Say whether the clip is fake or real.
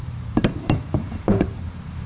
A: fake